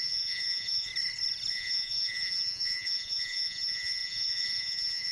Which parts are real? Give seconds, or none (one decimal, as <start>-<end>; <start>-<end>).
0.9-1.5